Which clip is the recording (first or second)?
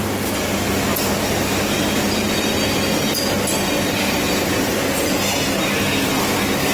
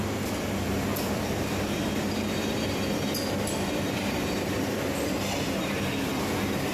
first